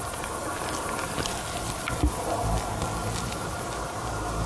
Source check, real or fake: real